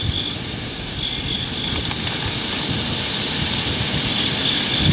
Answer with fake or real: real